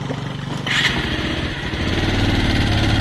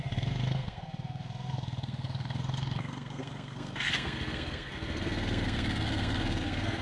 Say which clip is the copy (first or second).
second